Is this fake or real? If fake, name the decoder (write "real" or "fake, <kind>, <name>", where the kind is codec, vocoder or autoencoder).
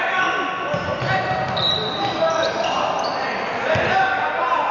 real